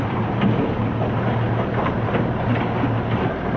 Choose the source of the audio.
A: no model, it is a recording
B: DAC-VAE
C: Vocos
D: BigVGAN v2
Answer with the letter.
A